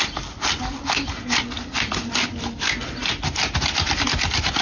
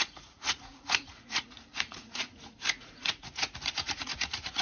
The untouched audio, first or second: first